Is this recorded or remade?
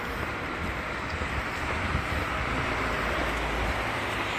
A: remade